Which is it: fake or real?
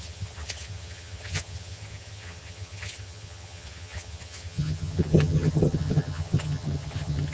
fake